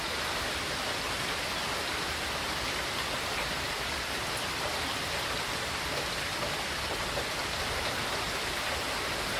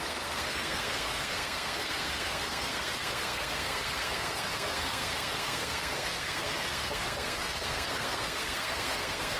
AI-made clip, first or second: second